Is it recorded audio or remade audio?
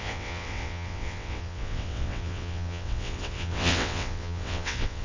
remade